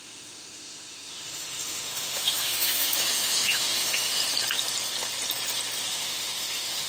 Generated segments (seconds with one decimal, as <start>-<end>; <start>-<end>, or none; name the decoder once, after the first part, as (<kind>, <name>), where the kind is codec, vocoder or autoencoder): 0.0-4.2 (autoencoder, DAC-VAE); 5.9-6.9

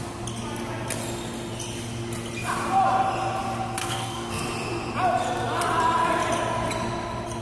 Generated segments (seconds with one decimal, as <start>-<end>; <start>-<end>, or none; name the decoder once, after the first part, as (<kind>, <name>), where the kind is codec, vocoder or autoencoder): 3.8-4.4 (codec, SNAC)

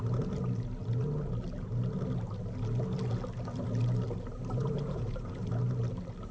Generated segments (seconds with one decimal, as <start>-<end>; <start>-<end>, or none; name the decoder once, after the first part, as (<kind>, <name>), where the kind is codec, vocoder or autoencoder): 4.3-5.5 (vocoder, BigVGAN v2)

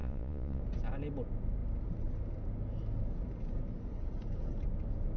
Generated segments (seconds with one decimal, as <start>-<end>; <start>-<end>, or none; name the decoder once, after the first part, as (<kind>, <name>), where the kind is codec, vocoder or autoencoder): 0.0-0.6 (vocoder, Vocos)

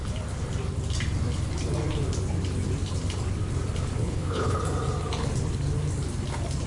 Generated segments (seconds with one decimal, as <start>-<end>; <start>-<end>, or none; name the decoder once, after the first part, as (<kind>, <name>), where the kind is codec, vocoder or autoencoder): 4.0-4.6 (codec, HILCodec)

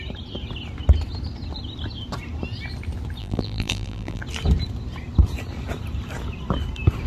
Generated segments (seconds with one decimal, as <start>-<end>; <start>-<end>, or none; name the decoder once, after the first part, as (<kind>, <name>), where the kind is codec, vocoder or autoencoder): 3.2-4.2 (vocoder, BigVGAN v2)